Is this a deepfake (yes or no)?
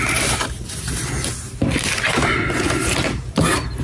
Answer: yes